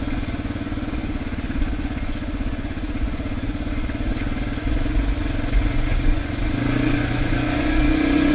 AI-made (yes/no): yes